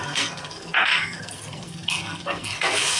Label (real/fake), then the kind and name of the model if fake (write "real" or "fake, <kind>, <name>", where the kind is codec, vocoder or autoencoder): fake, codec, SNAC